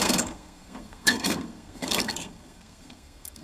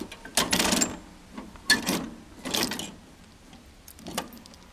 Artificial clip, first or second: first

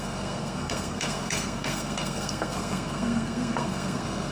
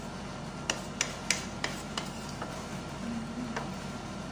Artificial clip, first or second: first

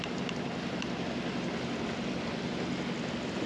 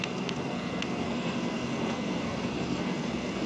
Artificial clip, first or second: second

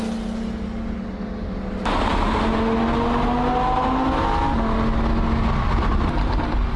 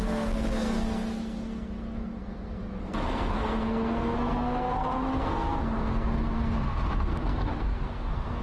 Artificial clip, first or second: second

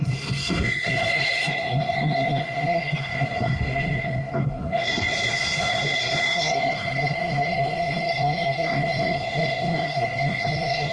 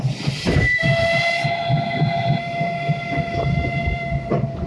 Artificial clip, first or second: first